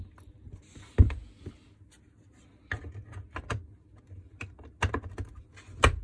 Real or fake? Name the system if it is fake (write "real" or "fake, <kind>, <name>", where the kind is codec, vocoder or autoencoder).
real